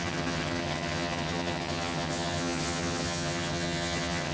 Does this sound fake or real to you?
fake